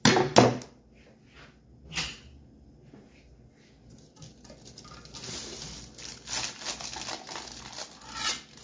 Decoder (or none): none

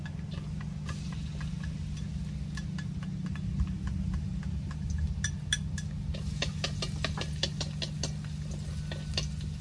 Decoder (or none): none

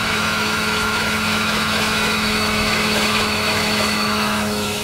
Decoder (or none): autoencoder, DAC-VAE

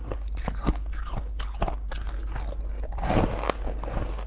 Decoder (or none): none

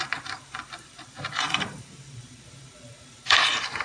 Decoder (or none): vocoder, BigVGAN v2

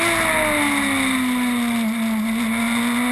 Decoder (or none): none